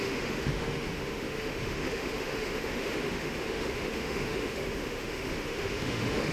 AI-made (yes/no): yes